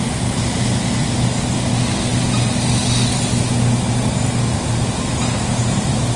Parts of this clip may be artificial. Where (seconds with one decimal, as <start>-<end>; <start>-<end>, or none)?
none